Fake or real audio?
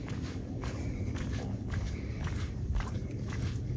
fake